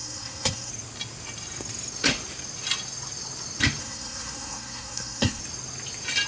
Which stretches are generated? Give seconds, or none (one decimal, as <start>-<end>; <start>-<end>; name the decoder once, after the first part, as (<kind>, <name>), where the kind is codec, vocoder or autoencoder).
0.0-0.7 (codec, SNAC); 3.8-5.4